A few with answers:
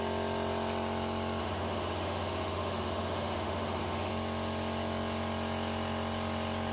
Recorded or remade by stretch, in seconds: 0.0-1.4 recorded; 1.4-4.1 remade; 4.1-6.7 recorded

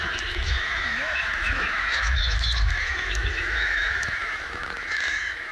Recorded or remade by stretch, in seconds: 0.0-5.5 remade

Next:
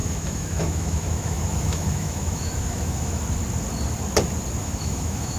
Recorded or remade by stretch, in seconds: 0.0-3.2 remade; 3.2-4.6 recorded; 4.6-5.4 remade